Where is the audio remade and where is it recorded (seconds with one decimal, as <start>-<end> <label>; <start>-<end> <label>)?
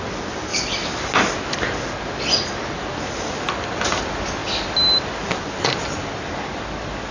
0.0-7.1 recorded